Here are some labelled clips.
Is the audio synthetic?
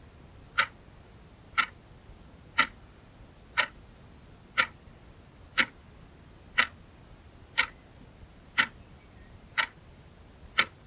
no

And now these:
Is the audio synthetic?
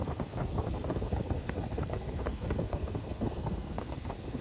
yes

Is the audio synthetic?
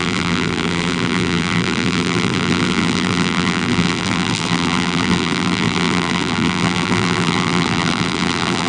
yes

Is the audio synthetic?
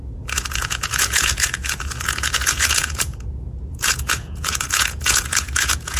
yes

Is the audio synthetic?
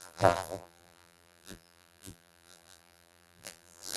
yes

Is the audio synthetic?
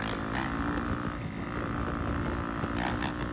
no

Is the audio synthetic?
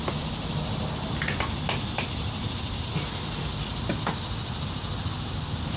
no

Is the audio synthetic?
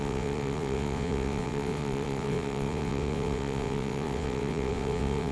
yes